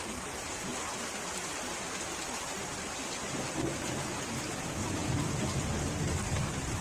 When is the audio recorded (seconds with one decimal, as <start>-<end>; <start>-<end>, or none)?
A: 0.7-4.4